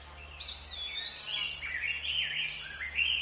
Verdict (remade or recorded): recorded